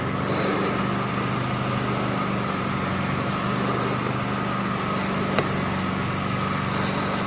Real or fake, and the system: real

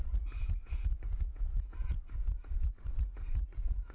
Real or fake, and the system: fake, vocoder, Vocos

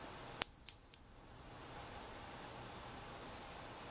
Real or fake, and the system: real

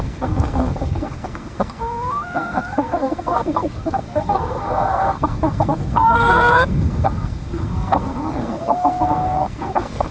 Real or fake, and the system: fake, codec, SNAC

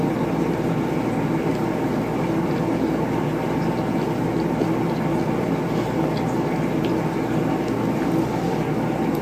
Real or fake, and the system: real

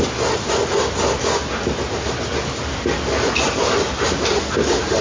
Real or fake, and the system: real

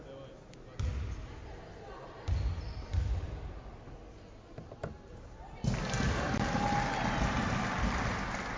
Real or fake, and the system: real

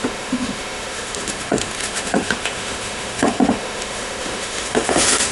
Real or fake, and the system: fake, autoencoder, DAC-VAE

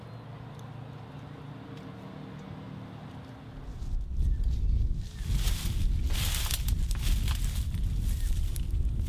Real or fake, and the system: real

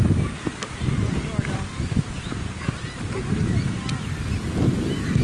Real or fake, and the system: real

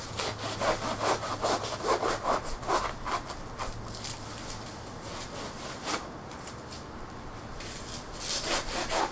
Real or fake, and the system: real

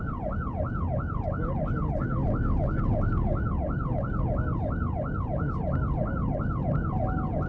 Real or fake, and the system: real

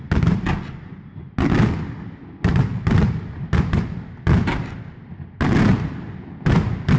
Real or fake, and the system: real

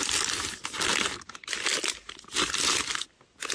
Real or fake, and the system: real